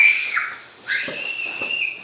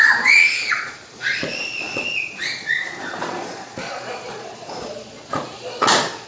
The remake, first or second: second